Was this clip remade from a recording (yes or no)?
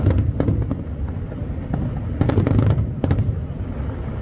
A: no